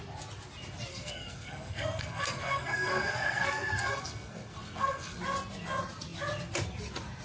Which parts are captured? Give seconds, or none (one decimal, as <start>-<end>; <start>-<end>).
0.0-0.9; 5.2-7.2